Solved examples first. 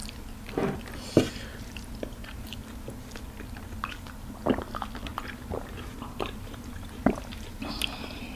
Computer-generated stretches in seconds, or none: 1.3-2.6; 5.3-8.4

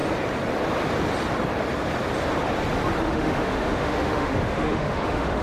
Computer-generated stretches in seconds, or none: 3.0-5.4

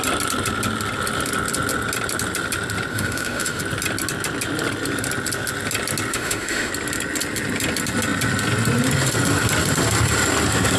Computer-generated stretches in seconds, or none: 2.9-3.6; 6.1-6.7

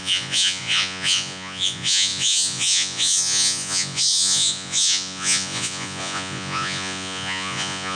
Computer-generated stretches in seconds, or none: 0.0-8.0